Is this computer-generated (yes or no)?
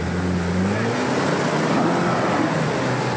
no